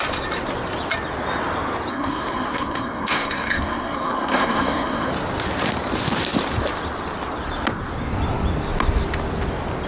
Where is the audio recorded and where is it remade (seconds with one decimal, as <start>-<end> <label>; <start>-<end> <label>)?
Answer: 0.0-1.9 recorded; 1.9-5.1 remade; 5.1-9.9 recorded